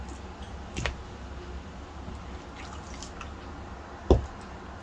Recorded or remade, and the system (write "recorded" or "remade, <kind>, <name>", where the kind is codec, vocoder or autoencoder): recorded